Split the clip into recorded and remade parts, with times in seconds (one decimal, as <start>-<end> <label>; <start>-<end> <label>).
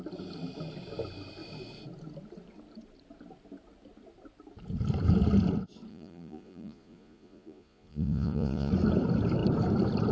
0.0-5.9 recorded; 5.9-8.7 remade; 8.7-10.1 recorded